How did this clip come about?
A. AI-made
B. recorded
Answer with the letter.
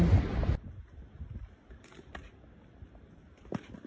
B